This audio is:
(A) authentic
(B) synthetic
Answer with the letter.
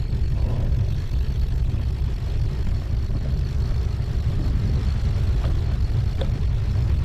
A